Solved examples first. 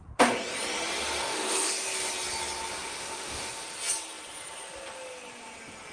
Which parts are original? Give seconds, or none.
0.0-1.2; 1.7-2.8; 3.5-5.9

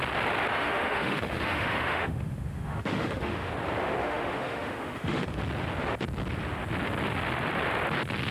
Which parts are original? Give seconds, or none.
0.0-0.5; 3.5-4.0; 5.4-8.3

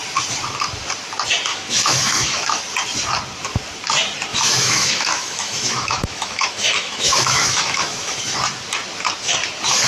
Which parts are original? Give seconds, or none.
0.0-1.5; 2.6-4.3; 8.2-9.9